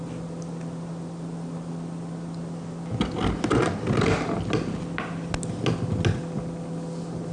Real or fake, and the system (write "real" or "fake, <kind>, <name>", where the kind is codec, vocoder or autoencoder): real